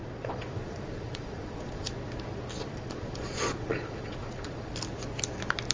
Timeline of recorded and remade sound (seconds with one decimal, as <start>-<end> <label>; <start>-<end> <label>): 0.0-1.9 remade; 1.9-2.7 recorded; 2.7-4.7 remade; 4.7-5.7 recorded